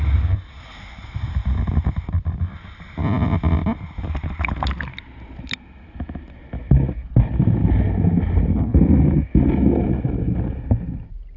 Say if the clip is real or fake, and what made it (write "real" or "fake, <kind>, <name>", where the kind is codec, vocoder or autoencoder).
real